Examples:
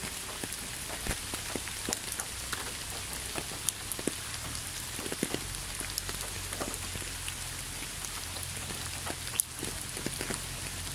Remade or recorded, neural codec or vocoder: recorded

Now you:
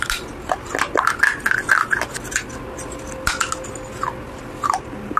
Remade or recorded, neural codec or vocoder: recorded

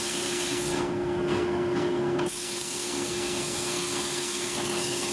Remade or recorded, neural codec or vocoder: remade, codec, SNAC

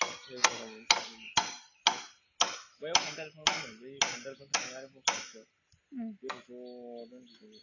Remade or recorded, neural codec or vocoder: recorded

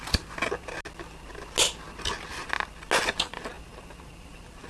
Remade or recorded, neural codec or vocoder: recorded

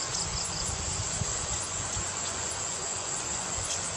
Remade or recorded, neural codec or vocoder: remade, vocoder, Vocos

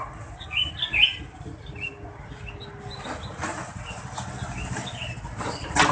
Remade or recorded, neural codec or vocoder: recorded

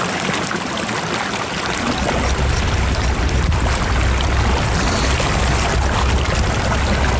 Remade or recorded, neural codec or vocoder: recorded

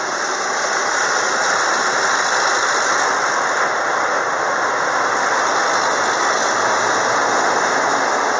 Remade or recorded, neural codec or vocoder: recorded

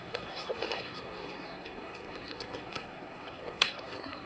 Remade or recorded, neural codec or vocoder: remade, codec, SNAC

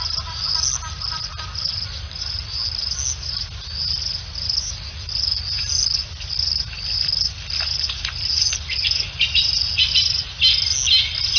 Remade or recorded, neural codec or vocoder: recorded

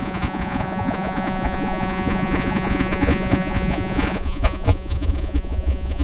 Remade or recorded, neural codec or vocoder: remade, vocoder, Vocos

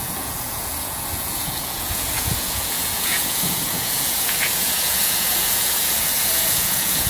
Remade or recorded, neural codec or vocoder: remade, vocoder, Vocos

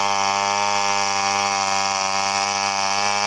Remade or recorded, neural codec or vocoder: recorded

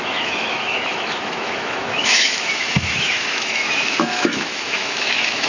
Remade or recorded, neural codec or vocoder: remade, autoencoder, DAC-VAE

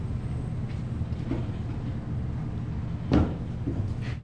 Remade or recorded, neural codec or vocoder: recorded